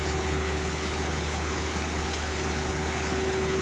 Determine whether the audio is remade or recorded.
remade